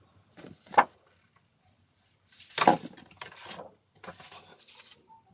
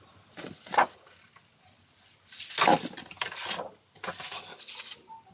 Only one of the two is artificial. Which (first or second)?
first